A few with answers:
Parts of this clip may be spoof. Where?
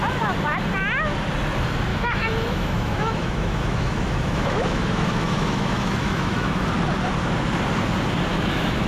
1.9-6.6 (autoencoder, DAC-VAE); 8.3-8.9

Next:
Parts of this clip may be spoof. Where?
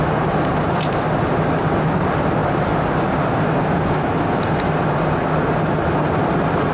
none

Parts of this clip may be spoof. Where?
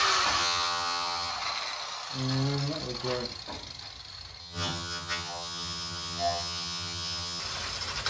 0.4-1.3 (vocoder, HiFi-GAN); 4.4-7.4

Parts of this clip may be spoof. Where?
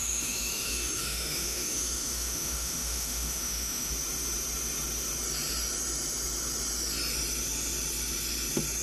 0.0-3.9 (autoencoder, DAC-VAE)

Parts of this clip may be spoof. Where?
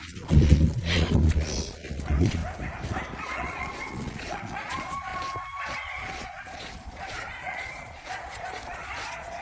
0.0-2.4 (vocoder, Vocos); 3.2-5.1; 5.6-9.4